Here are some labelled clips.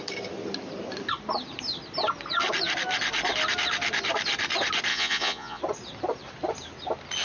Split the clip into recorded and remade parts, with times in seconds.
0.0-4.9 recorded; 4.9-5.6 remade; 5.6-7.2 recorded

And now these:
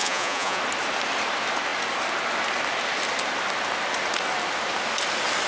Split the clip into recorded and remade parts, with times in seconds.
0.0-0.6 remade; 0.6-5.5 recorded

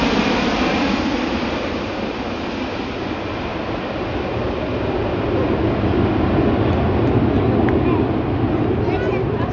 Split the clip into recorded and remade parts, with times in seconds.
0.0-9.5 recorded

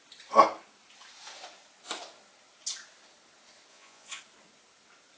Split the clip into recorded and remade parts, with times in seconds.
0.0-3.7 recorded; 3.7-4.2 remade; 4.2-5.2 recorded

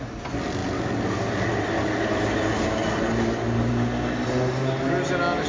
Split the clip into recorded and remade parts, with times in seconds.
0.0-5.5 recorded